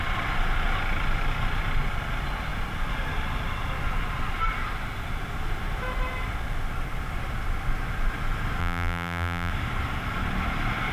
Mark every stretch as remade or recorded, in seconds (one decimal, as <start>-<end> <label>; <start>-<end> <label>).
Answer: 0.0-8.6 recorded; 8.6-9.5 remade; 9.5-10.9 recorded